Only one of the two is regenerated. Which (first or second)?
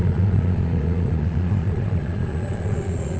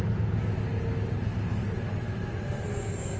first